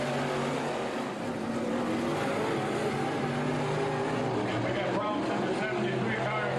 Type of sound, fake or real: real